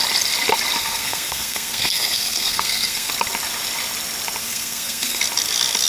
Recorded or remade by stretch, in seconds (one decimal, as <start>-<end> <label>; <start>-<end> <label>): 0.0-0.8 recorded; 0.8-3.1 remade; 3.1-4.4 recorded; 4.4-5.2 remade; 5.2-5.9 recorded